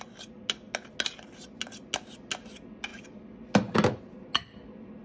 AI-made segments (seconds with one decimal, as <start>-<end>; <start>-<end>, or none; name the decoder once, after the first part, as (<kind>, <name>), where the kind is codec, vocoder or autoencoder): none